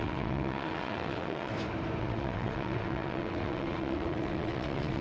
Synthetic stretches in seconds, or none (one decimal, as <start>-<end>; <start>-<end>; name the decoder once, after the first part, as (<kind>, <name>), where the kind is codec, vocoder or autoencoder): 0.0-1.5 (vocoder, WaveNeXt); 2.0-5.0